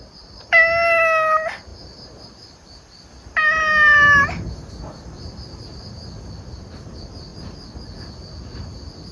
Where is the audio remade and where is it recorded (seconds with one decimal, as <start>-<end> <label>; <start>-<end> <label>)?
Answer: 0.0-9.1 recorded